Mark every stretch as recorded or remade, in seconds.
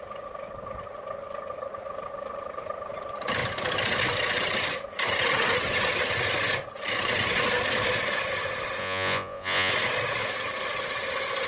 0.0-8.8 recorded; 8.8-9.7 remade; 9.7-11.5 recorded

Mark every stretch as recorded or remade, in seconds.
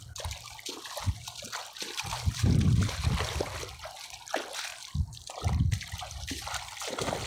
0.0-1.6 recorded; 1.6-2.9 remade; 2.9-4.7 recorded; 4.7-7.3 remade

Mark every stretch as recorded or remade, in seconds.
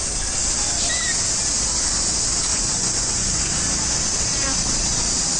0.0-2.5 recorded; 2.5-3.5 remade; 3.5-5.4 recorded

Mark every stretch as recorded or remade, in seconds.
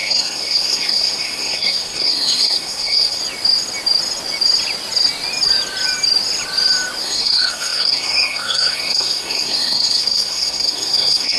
0.0-3.2 remade; 3.2-7.0 recorded; 7.0-11.4 remade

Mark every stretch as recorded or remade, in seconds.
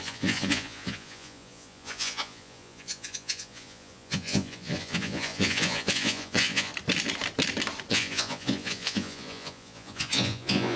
0.0-6.7 remade; 6.7-7.9 recorded; 7.9-10.8 remade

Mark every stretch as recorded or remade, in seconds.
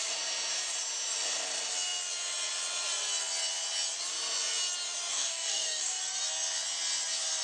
0.0-5.1 recorded; 5.1-6.0 remade; 6.0-7.4 recorded